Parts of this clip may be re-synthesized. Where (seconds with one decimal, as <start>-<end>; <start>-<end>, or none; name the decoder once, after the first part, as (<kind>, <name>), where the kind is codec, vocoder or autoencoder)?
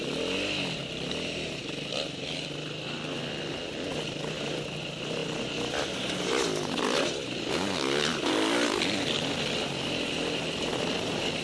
none